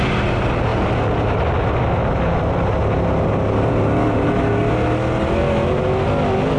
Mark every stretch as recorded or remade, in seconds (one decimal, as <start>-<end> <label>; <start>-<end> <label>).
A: 0.0-6.6 recorded